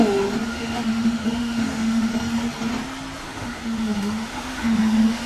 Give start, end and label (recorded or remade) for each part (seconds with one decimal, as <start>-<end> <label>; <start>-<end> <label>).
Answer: 0.0-0.5 recorded; 0.5-2.1 remade; 2.1-3.2 recorded; 3.2-5.3 remade